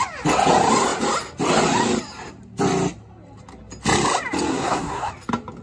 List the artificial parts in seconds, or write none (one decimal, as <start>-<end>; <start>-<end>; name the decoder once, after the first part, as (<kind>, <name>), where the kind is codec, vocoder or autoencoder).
4.5-5.1 (codec, SNAC)